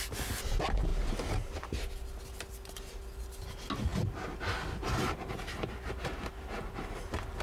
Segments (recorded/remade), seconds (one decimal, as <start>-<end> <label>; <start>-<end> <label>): 0.0-7.4 recorded

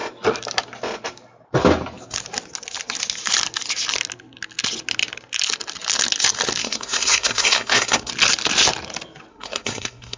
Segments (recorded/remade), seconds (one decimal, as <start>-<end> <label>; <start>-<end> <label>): 0.0-6.6 recorded; 6.6-8.1 remade; 8.1-9.3 recorded; 9.3-10.2 remade

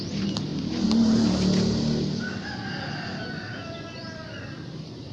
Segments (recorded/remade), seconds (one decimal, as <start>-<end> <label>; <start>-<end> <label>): 0.0-0.5 remade; 0.5-3.6 recorded; 3.6-5.1 remade

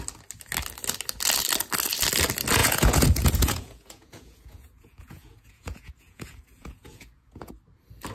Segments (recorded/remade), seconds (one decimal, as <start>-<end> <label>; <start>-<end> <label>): 0.0-2.6 recorded; 2.6-7.5 remade; 7.5-8.1 recorded

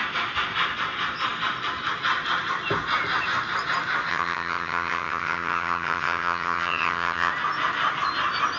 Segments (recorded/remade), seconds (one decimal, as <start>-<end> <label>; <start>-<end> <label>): 0.0-4.1 recorded; 4.1-7.3 remade; 7.3-8.6 recorded

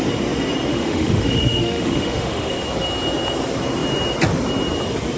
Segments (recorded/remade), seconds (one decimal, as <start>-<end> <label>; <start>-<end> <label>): 0.0-0.7 recorded; 0.7-2.5 remade; 2.5-5.2 recorded